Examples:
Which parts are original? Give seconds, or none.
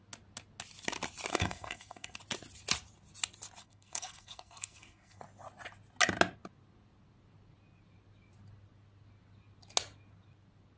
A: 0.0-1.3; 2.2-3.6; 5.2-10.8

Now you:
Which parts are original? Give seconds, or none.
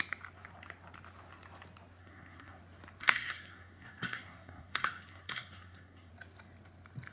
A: 0.0-2.0; 2.6-3.0; 6.1-7.1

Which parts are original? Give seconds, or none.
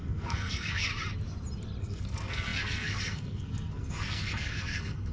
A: 0.9-1.8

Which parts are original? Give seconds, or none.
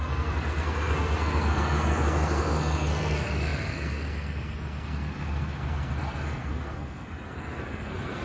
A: none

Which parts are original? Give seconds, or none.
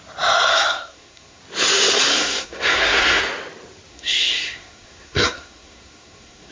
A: 0.0-0.5; 1.4-2.1; 3.2-3.9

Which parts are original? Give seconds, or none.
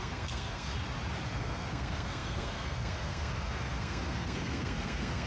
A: 0.7-1.3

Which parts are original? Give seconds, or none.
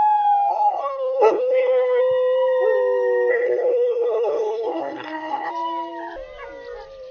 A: 0.0-0.5; 2.0-3.3; 5.5-7.1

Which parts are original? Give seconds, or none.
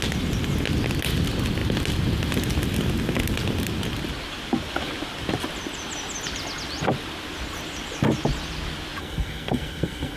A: 0.0-9.0